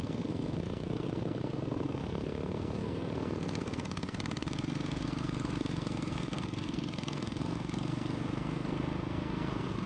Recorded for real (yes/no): no